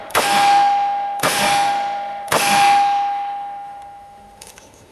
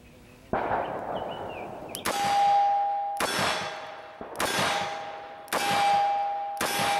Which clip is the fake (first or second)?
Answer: first